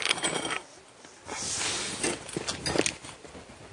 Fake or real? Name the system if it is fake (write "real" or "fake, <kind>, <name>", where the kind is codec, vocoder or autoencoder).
real